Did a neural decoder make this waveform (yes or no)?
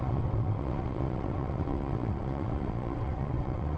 yes